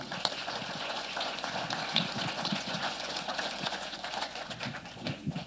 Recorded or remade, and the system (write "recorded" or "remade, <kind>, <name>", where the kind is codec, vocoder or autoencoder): remade, vocoder, Vocos